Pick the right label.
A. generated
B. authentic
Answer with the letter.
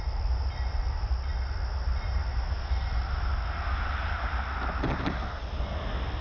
B